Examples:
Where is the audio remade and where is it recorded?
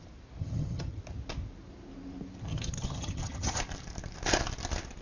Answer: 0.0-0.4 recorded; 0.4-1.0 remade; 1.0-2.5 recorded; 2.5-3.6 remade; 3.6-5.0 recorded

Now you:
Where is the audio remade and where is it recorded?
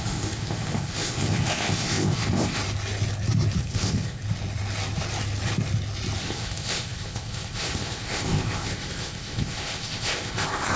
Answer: 0.0-2.6 remade; 2.6-3.6 recorded; 3.6-4.2 remade; 4.2-6.2 recorded; 6.2-10.8 remade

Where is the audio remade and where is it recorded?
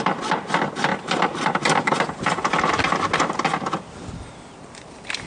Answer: 0.0-0.9 recorded; 0.9-2.5 remade; 2.5-5.3 recorded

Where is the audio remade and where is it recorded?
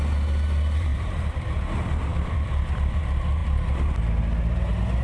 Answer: 0.0-0.9 recorded; 0.9-1.6 remade; 1.6-2.1 recorded; 2.1-3.0 remade; 3.0-5.0 recorded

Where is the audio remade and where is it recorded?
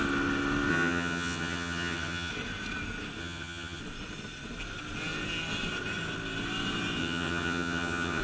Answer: 0.0-0.7 recorded; 0.7-2.3 remade; 2.3-3.2 recorded; 3.2-3.8 remade; 3.8-7.0 recorded; 7.0-8.2 remade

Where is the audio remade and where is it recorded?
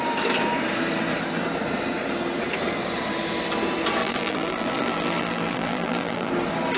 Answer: 0.0-4.0 recorded; 4.0-6.3 remade; 6.3-6.8 recorded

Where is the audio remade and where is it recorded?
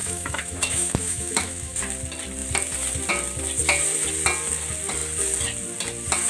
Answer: 0.0-1.8 remade; 1.8-6.3 recorded